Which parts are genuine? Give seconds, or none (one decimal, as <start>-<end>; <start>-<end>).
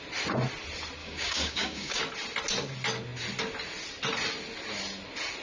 0.0-1.0; 2.0-5.4